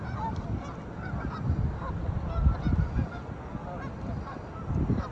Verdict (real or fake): real